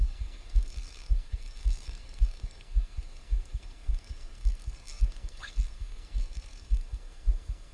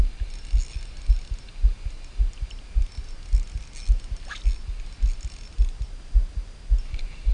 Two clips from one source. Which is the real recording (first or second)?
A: second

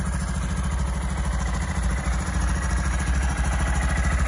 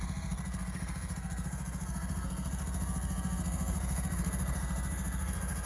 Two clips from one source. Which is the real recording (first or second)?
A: first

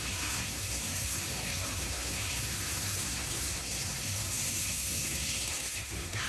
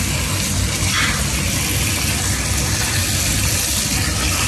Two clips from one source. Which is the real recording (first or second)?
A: second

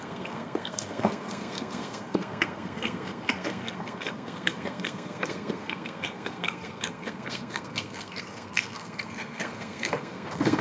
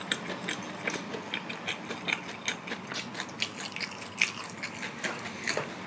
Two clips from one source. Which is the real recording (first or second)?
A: second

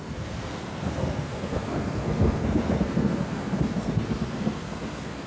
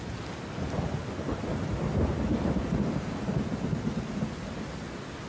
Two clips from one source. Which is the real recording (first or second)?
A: second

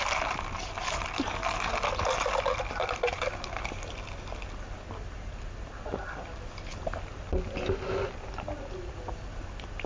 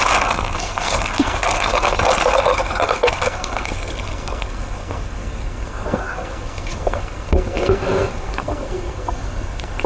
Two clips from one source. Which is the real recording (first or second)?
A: first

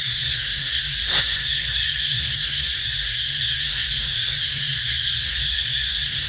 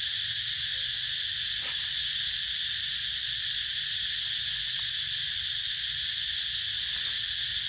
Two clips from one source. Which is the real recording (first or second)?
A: second